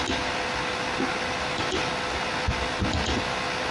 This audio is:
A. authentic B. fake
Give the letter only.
A